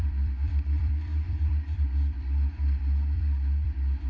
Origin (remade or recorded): remade